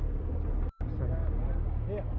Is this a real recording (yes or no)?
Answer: yes